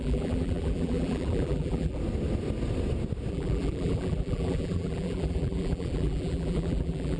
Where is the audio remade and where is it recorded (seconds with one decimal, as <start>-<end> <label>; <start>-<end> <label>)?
0.0-2.0 remade; 2.0-3.3 recorded; 3.3-7.2 remade